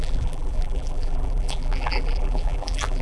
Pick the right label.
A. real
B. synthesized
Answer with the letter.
B